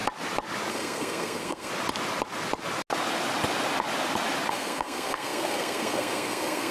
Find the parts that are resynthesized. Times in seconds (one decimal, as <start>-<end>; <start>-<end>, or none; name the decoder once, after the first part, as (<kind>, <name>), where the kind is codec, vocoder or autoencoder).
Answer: 0.7-1.7 (codec, SNAC); 4.5-6.7